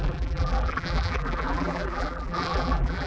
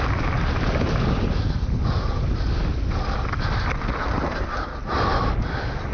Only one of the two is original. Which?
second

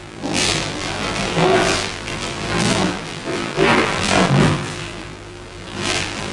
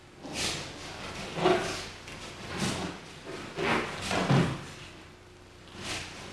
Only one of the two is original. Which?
second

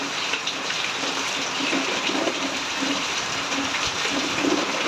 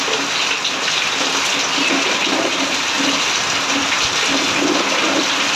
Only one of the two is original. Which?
second